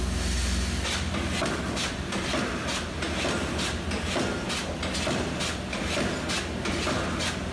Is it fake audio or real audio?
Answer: real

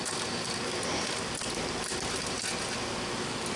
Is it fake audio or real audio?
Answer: real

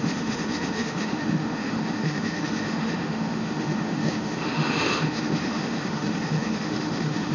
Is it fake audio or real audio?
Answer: fake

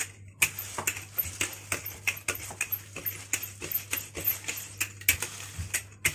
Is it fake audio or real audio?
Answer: real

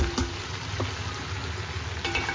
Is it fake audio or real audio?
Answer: real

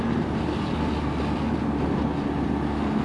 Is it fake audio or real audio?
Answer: real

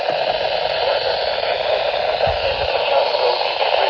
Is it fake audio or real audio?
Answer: real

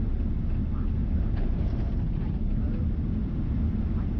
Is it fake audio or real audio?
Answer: real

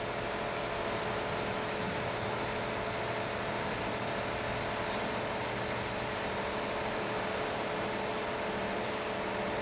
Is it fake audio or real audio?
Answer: real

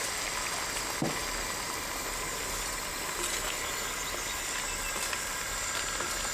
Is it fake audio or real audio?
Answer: real